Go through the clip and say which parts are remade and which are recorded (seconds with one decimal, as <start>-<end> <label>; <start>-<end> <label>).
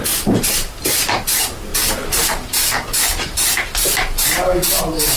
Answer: 0.0-5.2 remade